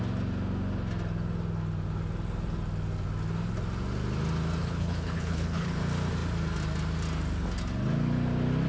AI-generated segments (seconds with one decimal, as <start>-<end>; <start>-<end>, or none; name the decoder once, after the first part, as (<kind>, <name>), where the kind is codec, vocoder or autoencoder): 4.6-5.8 (codec, HILCodec)